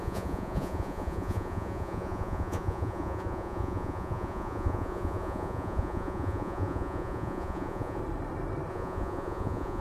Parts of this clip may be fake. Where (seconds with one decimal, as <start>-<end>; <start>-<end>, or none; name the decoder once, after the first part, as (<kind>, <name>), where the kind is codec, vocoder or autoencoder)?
0.0-8.0 (vocoder, Vocos); 8.7-9.8